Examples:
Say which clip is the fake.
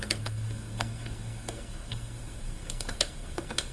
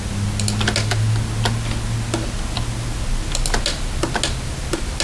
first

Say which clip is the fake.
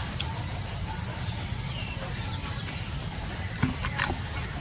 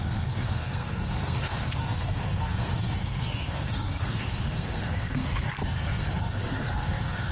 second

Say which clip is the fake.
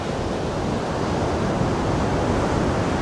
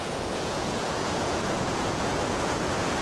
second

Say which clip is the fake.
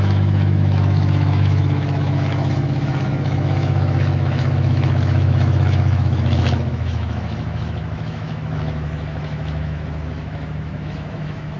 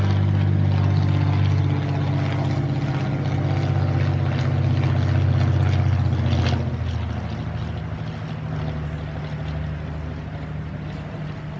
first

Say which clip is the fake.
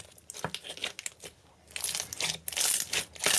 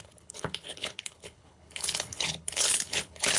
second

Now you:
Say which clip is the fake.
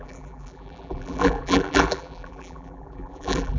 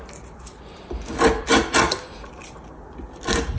first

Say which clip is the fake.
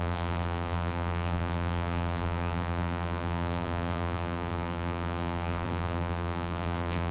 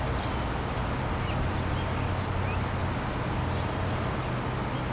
first